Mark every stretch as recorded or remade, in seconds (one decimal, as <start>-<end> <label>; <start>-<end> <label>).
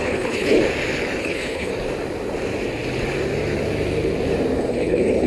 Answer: 0.0-0.6 remade; 0.6-1.2 recorded; 1.2-1.7 remade; 1.7-4.6 recorded; 4.6-5.3 remade